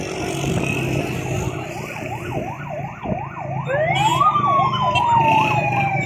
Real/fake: real